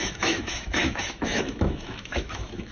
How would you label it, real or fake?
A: fake